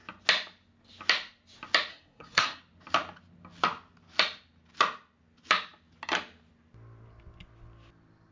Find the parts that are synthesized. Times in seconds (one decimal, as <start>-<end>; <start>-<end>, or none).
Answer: 1.9-2.6